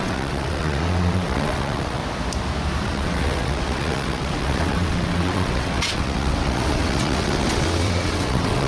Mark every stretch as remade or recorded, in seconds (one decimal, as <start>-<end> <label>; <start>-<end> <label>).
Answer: 0.0-2.0 remade; 2.0-2.8 recorded; 2.8-8.7 remade